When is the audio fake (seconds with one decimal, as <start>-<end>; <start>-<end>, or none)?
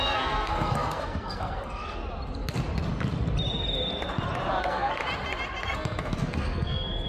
0.0-2.0; 4.6-5.0; 5.6-7.1